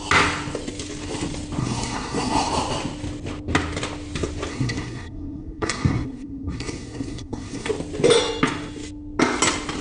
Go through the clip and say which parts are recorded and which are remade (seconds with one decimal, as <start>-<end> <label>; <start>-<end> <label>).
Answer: 0.0-1.6 recorded; 1.6-2.5 remade; 2.5-4.5 recorded; 4.5-7.7 remade; 7.7-9.8 recorded